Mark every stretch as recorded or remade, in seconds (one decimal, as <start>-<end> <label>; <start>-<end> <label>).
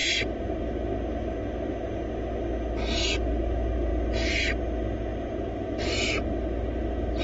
0.0-7.2 recorded